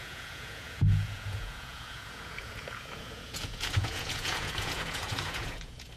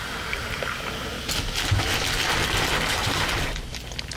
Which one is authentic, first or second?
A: second